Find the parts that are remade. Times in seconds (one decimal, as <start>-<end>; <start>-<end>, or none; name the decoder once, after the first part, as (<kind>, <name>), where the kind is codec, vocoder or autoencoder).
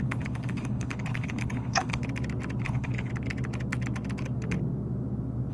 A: 0.0-2.0 (codec, HILCodec); 2.6-3.1